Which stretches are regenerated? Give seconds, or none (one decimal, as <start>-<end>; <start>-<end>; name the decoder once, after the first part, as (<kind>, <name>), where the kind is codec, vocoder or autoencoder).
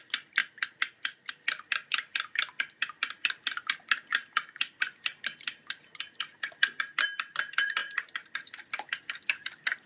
none